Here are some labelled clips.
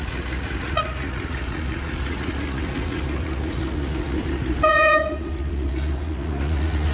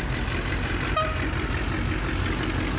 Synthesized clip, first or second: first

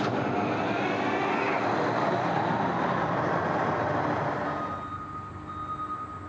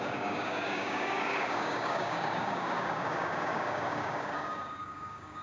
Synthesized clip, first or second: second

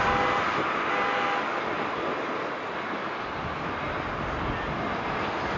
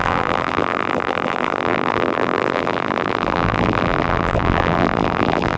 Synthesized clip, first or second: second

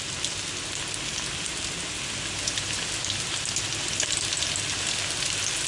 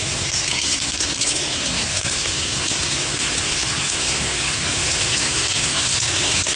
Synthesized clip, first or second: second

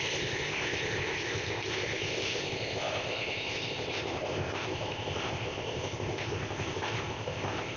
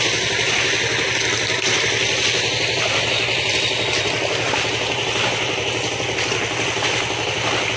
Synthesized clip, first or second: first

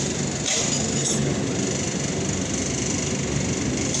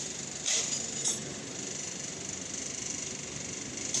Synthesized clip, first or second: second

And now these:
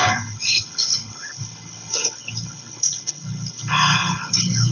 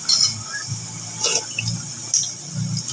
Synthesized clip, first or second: first